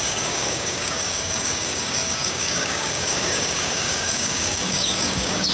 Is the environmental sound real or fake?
fake